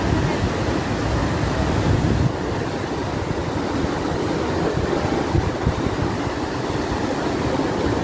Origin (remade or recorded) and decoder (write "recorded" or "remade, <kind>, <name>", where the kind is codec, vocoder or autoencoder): recorded